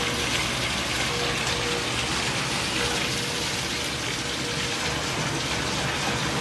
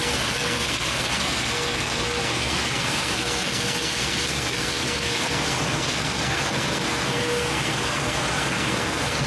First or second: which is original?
first